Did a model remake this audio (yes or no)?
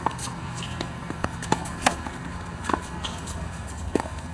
yes